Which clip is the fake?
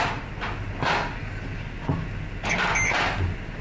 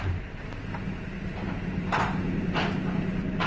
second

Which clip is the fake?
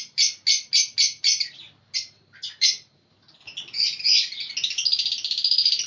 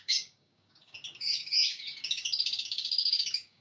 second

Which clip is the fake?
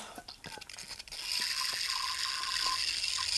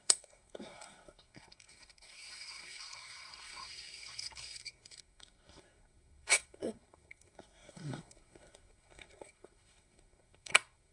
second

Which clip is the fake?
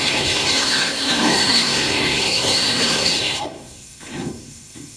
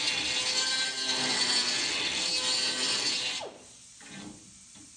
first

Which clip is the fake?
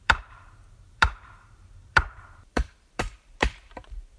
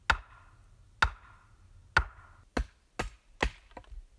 first